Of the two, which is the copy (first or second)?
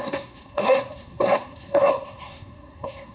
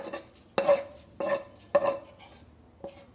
first